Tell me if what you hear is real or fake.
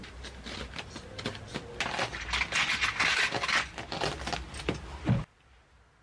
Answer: real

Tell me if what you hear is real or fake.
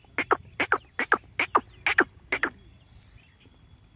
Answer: real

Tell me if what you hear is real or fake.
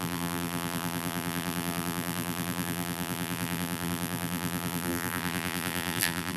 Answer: fake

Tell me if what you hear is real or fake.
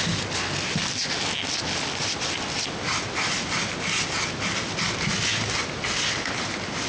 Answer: real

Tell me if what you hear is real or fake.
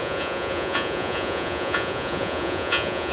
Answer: fake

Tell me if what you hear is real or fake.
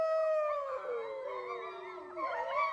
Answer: real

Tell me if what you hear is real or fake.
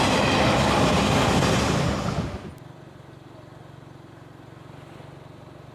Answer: real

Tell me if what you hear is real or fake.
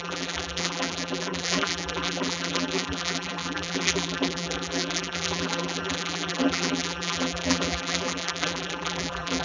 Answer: fake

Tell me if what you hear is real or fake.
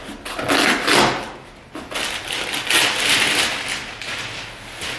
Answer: real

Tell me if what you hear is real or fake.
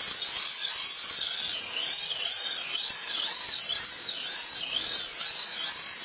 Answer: real